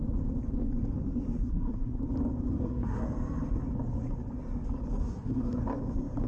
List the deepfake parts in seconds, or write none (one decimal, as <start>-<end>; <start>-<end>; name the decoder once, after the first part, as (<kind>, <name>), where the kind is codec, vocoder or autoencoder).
1.4-2.0 (codec, SNAC); 2.5-3.0; 5.0-5.6